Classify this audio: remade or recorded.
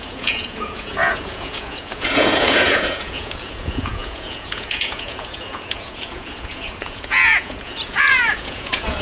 remade